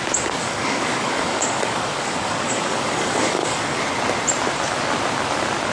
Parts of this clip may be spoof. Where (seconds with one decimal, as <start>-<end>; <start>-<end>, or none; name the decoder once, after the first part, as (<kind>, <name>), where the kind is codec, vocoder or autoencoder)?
0.4-3.8 (codec, DAC)